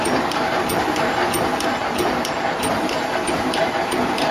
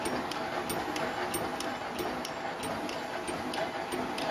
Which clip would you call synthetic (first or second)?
first